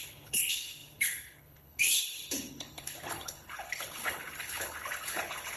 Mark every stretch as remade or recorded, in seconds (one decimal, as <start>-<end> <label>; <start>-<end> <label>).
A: 0.0-5.6 remade